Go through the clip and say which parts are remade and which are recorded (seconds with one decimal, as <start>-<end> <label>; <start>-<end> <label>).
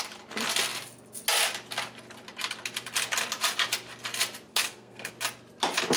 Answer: 0.0-4.5 recorded; 4.5-5.1 remade; 5.1-6.0 recorded